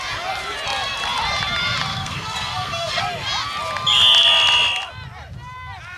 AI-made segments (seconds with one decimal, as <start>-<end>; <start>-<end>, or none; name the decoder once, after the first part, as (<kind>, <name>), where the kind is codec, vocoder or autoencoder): 1.9-3.0 (codec, SNAC)